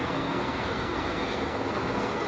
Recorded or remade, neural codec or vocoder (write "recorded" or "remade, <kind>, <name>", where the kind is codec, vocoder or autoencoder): remade, codec, SNAC